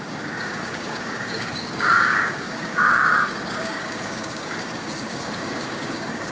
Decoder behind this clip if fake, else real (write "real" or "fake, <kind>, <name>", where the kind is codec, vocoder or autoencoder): fake, codec, DAC